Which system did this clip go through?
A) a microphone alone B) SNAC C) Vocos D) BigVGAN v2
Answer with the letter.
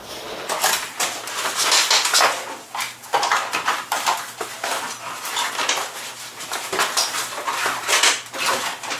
A